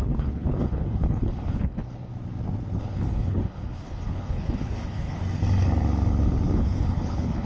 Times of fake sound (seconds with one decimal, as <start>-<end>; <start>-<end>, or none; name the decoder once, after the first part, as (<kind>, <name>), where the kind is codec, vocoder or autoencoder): 0.0-2.1 (codec, HILCodec); 2.8-5.2; 6.6-7.5